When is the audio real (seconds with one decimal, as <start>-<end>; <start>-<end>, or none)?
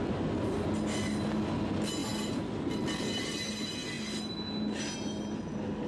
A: 0.0-5.9